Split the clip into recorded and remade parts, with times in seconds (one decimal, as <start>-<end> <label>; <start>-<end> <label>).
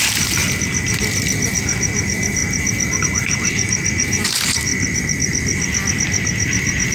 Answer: 0.0-0.4 remade; 0.4-1.5 recorded; 1.5-2.4 remade; 2.4-3.0 recorded; 3.0-4.7 remade; 4.7-6.9 recorded